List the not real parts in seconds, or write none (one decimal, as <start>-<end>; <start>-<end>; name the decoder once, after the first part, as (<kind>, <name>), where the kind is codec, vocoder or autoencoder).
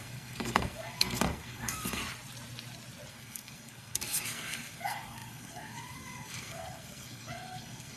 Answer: 0.0-2.0 (codec, SNAC); 3.1-8.0